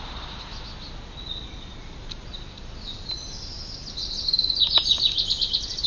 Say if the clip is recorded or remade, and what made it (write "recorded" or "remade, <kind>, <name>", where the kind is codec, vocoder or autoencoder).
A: recorded